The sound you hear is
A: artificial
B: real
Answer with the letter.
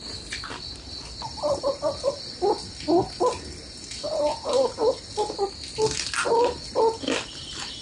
B